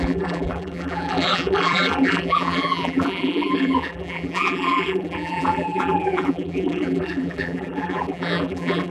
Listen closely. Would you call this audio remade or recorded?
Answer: remade